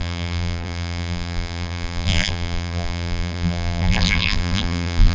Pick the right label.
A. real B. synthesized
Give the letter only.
B